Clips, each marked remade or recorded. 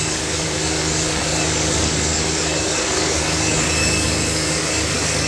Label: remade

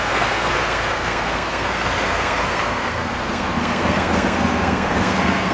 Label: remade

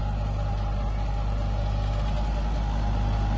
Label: recorded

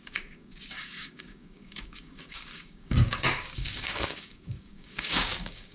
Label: remade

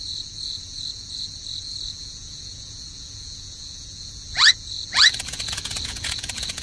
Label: remade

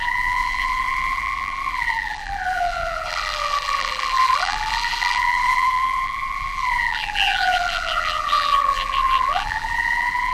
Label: remade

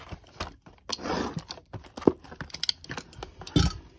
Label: recorded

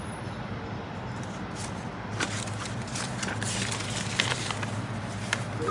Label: recorded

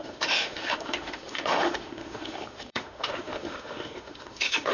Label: remade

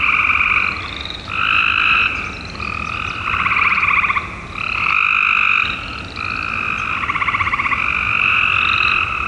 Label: recorded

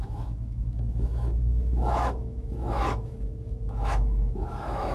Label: remade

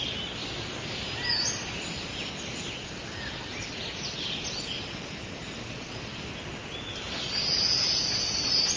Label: recorded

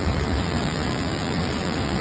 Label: remade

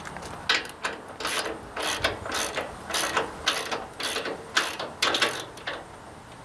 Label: recorded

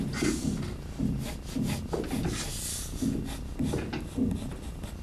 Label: recorded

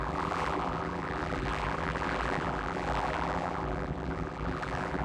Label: remade